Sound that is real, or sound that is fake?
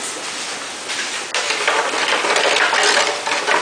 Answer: real